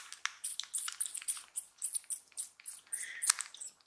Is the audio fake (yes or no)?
no